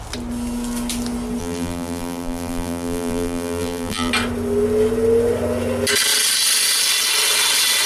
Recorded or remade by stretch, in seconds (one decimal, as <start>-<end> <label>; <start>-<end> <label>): 0.0-1.4 recorded; 1.4-4.1 remade; 4.1-7.9 recorded